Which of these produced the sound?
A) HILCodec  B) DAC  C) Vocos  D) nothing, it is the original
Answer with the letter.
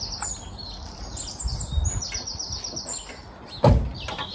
D